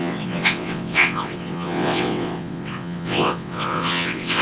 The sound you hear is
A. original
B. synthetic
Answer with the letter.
B